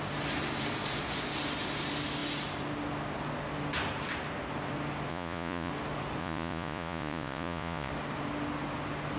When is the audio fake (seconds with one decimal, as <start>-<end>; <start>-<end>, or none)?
5.1-5.7; 6.2-7.9